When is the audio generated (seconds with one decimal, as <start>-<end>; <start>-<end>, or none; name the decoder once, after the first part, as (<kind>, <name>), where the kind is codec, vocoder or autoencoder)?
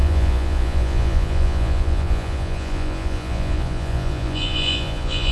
0.0-5.3 (vocoder, Vocos)